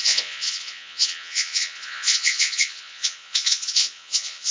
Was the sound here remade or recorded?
remade